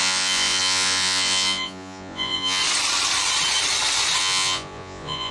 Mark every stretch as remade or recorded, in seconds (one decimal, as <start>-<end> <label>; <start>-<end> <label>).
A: 0.0-2.6 remade; 2.6-4.2 recorded; 4.2-5.3 remade